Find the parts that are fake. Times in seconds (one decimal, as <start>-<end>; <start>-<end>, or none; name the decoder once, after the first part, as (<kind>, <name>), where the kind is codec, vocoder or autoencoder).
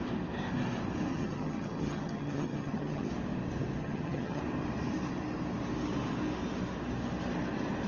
1.1-3.1 (vocoder, HiFi-GAN); 3.8-4.4